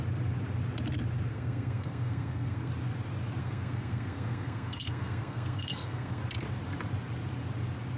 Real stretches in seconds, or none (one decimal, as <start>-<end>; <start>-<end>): 0.0-1.3; 2.7-3.4; 6.2-8.0